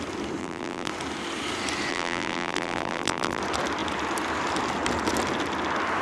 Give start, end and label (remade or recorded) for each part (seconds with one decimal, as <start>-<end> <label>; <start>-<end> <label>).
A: 0.0-0.4 recorded; 0.4-0.9 remade; 0.9-1.9 recorded; 1.9-3.4 remade; 3.4-6.0 recorded